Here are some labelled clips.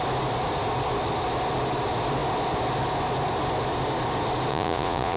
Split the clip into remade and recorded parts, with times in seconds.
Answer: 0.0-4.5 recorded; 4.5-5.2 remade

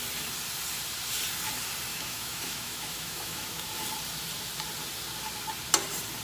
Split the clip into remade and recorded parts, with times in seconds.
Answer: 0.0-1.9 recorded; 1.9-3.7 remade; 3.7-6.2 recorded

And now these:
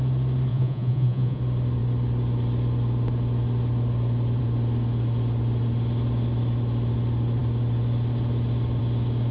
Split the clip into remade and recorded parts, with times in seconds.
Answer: 0.0-0.5 recorded; 0.5-1.4 remade; 1.4-9.3 recorded

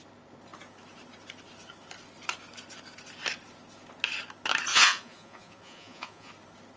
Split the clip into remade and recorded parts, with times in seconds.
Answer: 0.0-4.7 recorded; 4.7-6.3 remade; 6.3-6.8 recorded

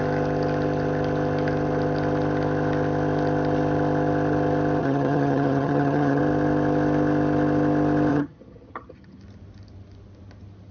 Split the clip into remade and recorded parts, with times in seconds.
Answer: 0.0-4.8 recorded; 4.8-6.2 remade; 6.2-8.1 recorded; 8.1-9.2 remade; 9.2-10.7 recorded

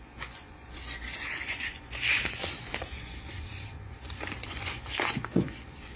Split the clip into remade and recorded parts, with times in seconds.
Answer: 0.0-6.0 remade

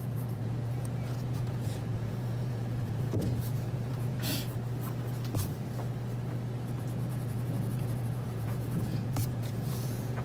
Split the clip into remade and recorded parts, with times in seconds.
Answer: 0.0-4.3 remade; 4.3-7.1 recorded; 7.1-10.2 remade

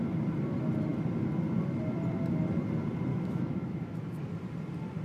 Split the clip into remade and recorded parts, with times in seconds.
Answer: 0.0-3.1 recorded; 3.1-3.9 remade; 3.9-5.0 recorded